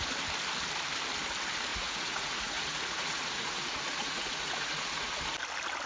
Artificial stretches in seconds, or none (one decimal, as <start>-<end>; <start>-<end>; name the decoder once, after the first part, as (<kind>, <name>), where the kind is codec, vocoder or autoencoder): 1.7-5.2 (vocoder, Vocos)